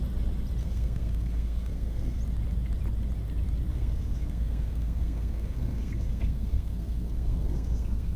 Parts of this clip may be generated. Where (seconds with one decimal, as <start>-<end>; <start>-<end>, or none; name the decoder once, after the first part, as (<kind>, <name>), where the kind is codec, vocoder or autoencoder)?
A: 0.6-2.2 (codec, SNAC); 3.7-8.2